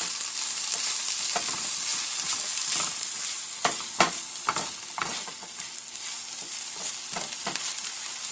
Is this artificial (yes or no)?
no